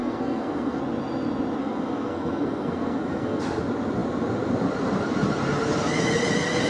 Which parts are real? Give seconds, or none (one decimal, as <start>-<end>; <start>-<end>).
0.8-1.6; 3.4-6.7